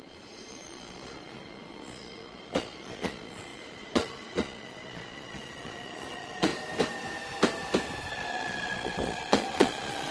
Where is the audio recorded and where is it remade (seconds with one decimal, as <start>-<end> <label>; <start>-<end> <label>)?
0.0-6.5 remade; 6.5-8.1 recorded; 8.1-10.1 remade